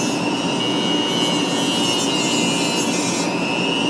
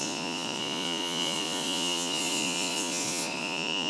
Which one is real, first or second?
first